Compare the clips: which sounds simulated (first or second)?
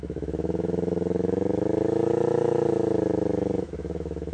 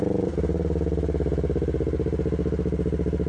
first